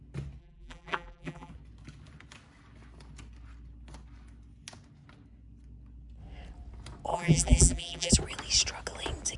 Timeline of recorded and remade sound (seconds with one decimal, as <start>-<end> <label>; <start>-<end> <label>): 0.0-0.4 recorded; 0.4-1.5 remade; 1.5-7.1 recorded; 7.1-8.1 remade; 8.1-9.4 recorded